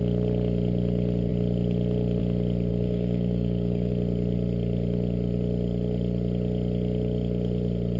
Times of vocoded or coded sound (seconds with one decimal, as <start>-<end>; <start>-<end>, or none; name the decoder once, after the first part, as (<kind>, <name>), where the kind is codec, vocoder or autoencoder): 2.7-3.9 (codec, DAC)